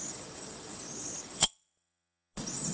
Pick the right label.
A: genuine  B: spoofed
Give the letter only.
B